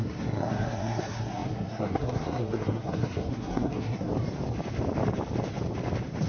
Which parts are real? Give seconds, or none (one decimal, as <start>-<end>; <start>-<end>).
4.1-6.3